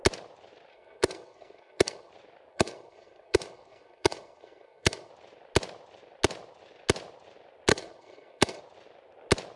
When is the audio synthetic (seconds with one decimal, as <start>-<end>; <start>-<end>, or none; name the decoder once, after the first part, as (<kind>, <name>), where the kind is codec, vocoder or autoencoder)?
0.7-2.1 (codec, SNAC); 2.5-5.1; 7.7-8.6